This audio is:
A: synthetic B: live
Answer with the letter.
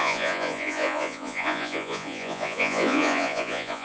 A